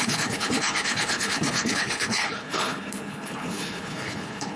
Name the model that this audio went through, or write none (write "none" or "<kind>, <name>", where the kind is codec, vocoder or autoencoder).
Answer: codec, HILCodec